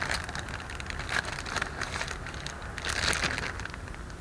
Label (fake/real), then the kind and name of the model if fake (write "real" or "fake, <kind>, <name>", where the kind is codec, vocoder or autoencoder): real